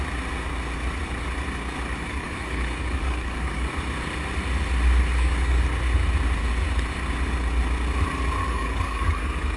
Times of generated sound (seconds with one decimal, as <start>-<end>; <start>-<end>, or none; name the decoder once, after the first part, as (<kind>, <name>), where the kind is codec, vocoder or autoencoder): 2.1-3.7 (codec, DAC); 5.1-5.6; 8.4-9.6